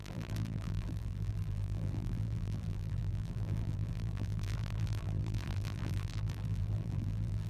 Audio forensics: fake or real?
fake